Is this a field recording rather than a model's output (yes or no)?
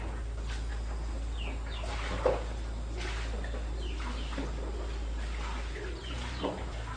yes